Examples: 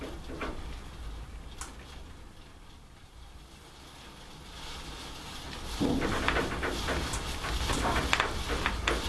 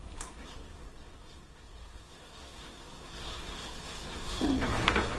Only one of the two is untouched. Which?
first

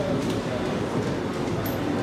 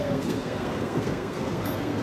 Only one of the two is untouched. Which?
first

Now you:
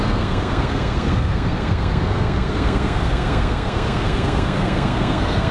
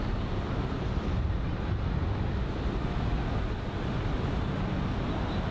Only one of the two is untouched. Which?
second